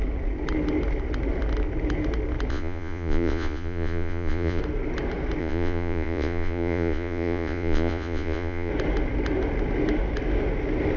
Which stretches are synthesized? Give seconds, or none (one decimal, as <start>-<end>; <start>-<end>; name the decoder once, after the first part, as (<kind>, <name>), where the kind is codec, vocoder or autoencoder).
2.5-4.6 (vocoder, Vocos); 5.4-8.7